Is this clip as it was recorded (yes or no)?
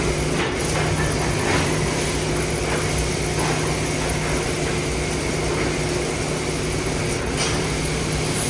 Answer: yes